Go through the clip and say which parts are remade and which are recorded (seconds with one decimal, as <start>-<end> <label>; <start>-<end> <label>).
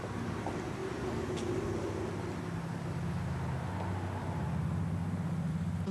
0.0-5.9 recorded